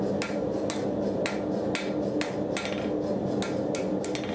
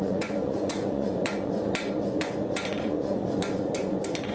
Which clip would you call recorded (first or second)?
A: first